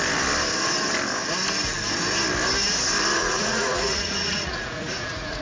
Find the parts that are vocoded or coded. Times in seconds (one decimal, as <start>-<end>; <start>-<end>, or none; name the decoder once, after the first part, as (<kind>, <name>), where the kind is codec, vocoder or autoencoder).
3.2-5.4 (vocoder, Vocos)